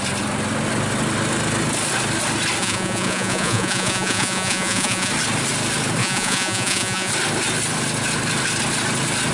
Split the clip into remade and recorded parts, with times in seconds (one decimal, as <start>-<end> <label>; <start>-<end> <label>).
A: 0.0-2.6 recorded; 2.6-5.1 remade; 5.1-6.0 recorded; 6.0-7.1 remade; 7.1-9.3 recorded